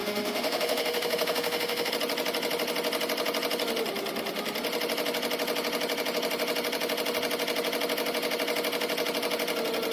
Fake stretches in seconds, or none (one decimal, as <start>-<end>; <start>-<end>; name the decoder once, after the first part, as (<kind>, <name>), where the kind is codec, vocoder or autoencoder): 0.0-1.9 (autoencoder, DAC-VAE)